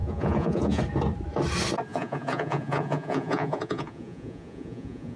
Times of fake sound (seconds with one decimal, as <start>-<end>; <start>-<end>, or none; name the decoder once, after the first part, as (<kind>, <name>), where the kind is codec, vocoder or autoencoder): 0.0-0.8 (vocoder, Vocos); 1.9-5.2